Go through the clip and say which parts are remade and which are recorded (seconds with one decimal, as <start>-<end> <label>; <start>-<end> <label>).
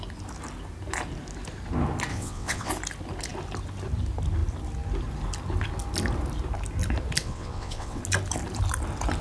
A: 0.0-2.1 recorded; 2.1-2.7 remade; 2.7-7.2 recorded; 7.2-8.0 remade; 8.0-9.2 recorded